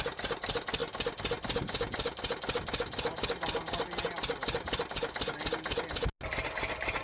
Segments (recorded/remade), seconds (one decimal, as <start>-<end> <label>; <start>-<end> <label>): 0.0-7.0 recorded